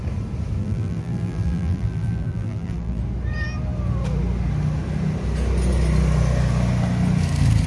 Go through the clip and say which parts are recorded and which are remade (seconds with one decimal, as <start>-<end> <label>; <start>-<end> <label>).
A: 0.0-0.6 recorded; 0.6-3.0 remade; 3.0-7.7 recorded